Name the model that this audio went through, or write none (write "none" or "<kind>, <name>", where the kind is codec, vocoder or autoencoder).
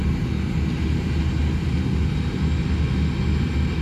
none